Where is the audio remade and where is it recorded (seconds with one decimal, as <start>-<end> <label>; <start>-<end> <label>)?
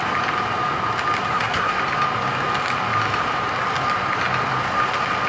0.0-1.3 recorded; 1.3-1.8 remade; 1.8-5.3 recorded